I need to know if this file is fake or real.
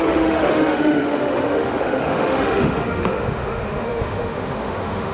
fake